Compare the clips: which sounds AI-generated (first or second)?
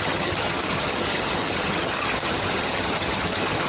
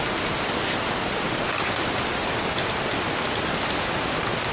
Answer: first